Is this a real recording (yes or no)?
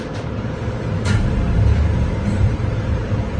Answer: no